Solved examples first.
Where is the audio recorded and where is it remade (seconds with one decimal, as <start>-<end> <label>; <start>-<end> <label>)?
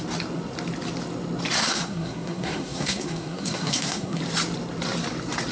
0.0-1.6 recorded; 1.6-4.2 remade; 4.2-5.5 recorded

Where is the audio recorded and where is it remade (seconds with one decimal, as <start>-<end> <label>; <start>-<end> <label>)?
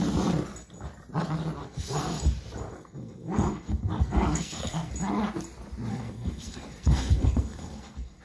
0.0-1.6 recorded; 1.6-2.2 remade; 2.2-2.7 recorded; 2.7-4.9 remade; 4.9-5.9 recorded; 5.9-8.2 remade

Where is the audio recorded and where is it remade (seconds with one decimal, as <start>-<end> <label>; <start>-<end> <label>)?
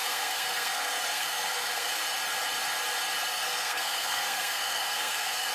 0.0-2.0 remade; 2.0-3.3 recorded; 3.3-5.5 remade